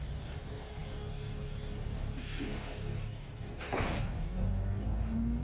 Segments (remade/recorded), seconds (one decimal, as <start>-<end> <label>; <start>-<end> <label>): 0.0-5.4 remade